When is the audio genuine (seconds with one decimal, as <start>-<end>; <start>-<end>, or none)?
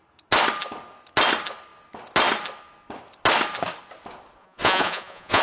0.0-4.4